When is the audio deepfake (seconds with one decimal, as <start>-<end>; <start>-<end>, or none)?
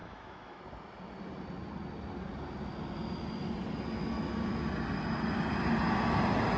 0.0-0.6